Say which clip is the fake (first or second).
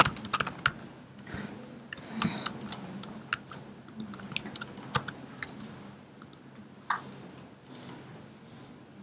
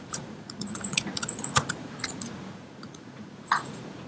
second